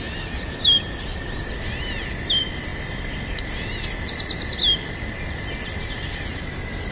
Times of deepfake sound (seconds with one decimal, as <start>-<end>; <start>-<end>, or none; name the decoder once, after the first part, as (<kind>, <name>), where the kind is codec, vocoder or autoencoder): none